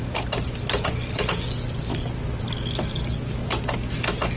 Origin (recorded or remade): recorded